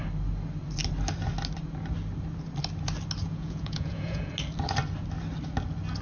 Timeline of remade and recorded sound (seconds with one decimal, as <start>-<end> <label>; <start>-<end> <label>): 0.0-3.2 recorded; 3.2-4.3 remade; 4.3-6.0 recorded